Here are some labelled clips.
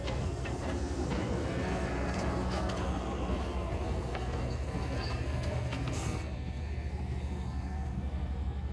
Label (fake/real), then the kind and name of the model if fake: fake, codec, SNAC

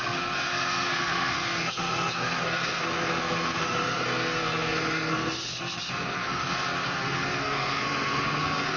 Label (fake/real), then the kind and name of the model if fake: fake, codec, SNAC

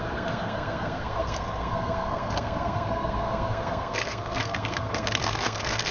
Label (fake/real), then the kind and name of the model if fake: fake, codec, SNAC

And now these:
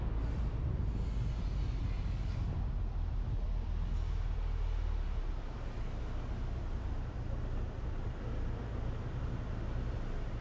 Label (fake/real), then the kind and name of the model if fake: real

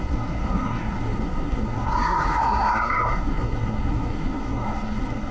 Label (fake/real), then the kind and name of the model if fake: fake, codec, SNAC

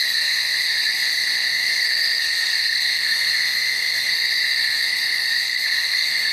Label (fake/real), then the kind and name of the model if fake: fake, codec, SNAC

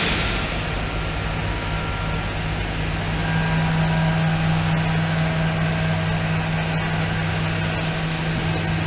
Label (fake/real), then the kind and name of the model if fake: real